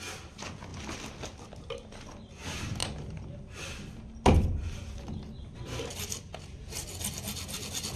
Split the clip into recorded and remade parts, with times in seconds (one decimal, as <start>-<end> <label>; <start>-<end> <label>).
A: 0.0-8.0 recorded